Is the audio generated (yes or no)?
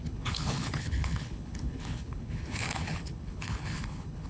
yes